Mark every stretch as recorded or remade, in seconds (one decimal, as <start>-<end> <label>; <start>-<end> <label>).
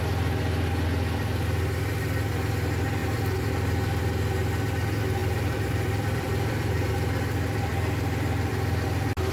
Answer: 0.0-3.0 recorded; 3.0-3.5 remade; 3.5-5.2 recorded; 5.2-6.9 remade; 6.9-9.3 recorded